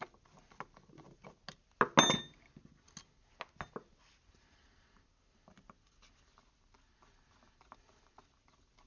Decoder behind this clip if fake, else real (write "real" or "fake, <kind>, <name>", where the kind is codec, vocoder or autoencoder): real